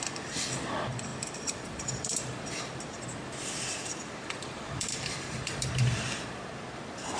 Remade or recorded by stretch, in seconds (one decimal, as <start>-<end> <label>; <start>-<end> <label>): 0.0-7.2 remade